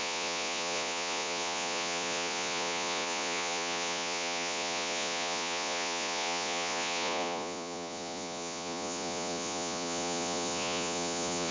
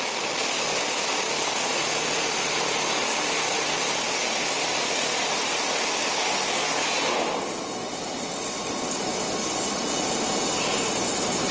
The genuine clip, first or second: second